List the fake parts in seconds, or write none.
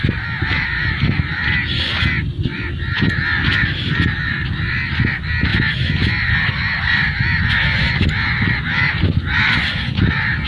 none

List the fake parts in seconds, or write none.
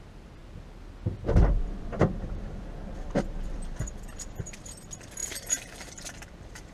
0.0-0.4 (vocoder, BigVGAN v2); 1.8-6.7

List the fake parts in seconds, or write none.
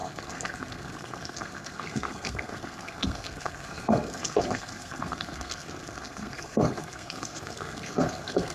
0.0-8.5 (codec, SNAC)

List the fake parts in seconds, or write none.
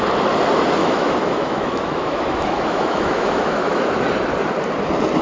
0.8-3.9 (autoencoder, DAC-VAE)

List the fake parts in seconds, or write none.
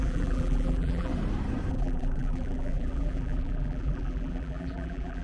0.0-1.1 (vocoder, BigVGAN v2); 1.7-5.2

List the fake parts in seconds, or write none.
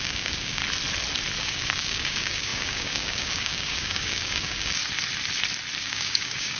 0.0-0.6 (codec, DAC); 1.4-4.8; 5.8-6.6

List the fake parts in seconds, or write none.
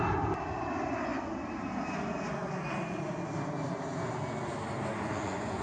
4.9-5.6 (vocoder, Vocos)